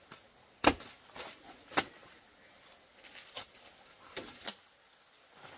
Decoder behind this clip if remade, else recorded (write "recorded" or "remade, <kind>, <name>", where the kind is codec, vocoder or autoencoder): recorded